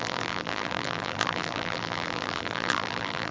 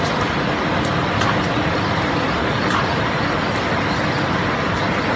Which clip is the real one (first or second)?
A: second